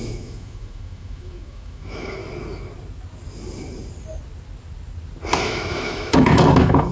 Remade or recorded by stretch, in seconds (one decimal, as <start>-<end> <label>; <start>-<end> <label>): 0.0-2.2 remade; 2.2-5.4 recorded; 5.4-6.9 remade